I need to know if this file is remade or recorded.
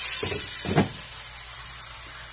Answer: recorded